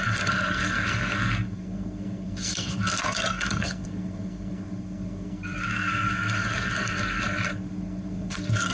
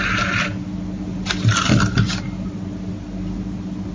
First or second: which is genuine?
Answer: second